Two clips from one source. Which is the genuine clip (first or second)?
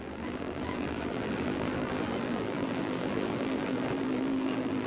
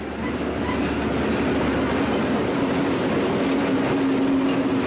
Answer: second